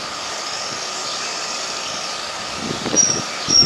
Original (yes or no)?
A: no